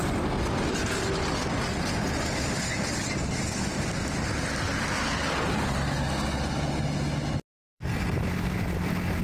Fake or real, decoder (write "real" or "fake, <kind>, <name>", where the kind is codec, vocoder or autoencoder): real